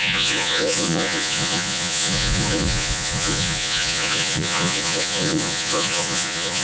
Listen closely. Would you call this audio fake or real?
fake